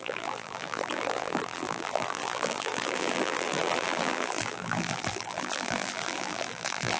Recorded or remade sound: remade